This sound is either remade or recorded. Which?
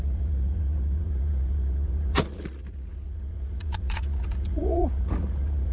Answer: remade